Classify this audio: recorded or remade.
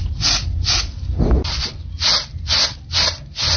recorded